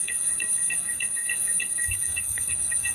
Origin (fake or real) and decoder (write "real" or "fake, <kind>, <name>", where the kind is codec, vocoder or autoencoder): fake, codec, SNAC